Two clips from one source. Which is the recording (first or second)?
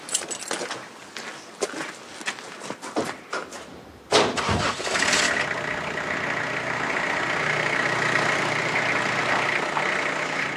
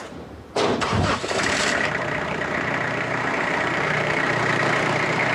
first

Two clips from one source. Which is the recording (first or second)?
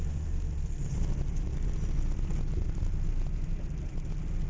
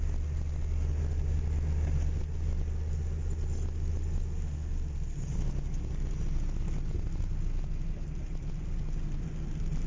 second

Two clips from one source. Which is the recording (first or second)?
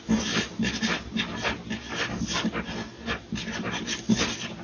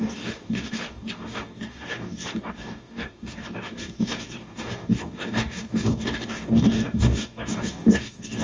first